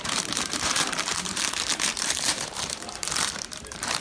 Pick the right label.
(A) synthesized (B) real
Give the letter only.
A